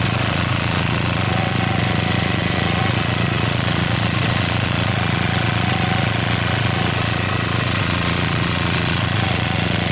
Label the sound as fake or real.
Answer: fake